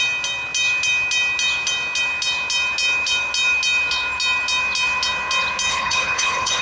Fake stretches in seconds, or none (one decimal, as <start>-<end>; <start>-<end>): 5.7-6.6

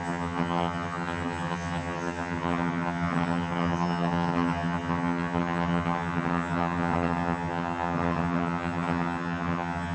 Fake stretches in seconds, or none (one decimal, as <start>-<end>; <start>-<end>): 0.0-9.9

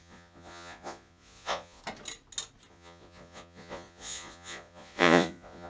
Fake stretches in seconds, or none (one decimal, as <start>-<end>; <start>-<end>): 0.0-1.8; 2.7-5.7

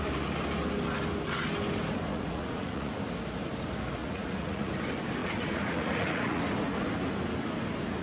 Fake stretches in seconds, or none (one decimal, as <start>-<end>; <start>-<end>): 2.1-2.9; 4.0-4.7; 5.2-6.4

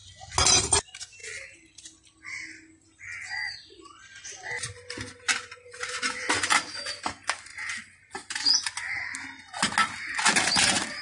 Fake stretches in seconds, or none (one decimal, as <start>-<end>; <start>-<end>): none

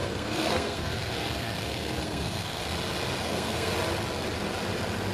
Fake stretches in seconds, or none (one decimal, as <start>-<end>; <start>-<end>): 0.0-2.6; 3.2-3.7

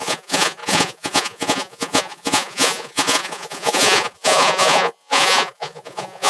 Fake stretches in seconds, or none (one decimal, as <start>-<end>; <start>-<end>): 0.0-6.3